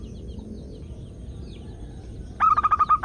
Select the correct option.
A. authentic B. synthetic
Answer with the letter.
A